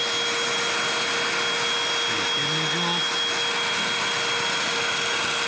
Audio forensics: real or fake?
real